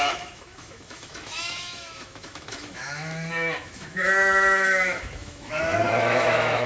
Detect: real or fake fake